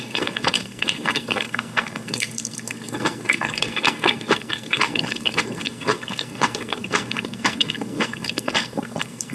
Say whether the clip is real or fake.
fake